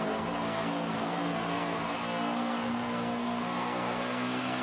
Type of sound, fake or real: fake